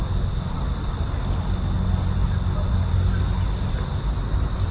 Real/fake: real